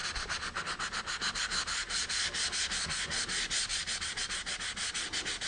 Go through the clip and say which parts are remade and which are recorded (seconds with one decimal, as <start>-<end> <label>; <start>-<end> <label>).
0.0-1.8 recorded; 1.8-2.4 remade; 2.4-3.7 recorded; 3.7-4.2 remade; 4.2-5.5 recorded